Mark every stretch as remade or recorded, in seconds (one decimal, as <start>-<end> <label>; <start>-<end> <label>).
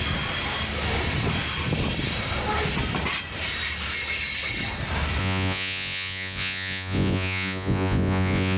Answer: 0.0-5.2 recorded; 5.2-8.6 remade